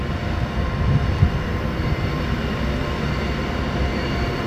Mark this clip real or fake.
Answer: real